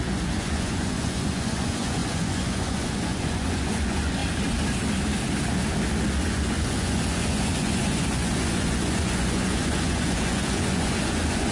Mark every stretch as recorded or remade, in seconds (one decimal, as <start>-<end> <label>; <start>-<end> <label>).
0.0-4.2 remade; 4.2-6.2 recorded; 6.2-11.5 remade